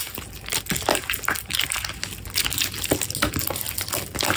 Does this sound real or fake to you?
real